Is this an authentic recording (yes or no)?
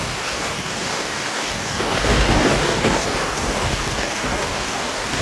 no